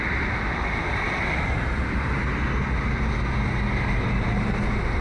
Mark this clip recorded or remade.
recorded